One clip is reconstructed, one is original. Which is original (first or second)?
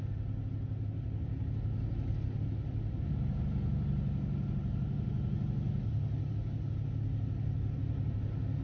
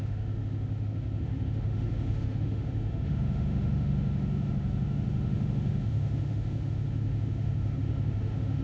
first